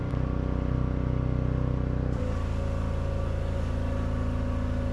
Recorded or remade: recorded